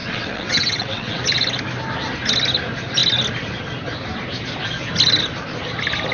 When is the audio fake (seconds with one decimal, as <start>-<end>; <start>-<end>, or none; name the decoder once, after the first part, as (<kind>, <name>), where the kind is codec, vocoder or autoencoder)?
0.0-1.2 (vocoder, WaveNeXt)